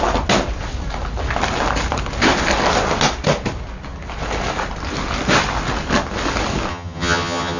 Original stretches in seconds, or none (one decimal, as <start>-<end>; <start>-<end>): 0.0-6.7